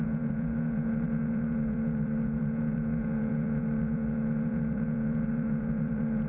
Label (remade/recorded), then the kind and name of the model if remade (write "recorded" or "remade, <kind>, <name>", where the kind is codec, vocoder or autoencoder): remade, vocoder, Vocos